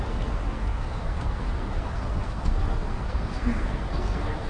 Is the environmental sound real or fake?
fake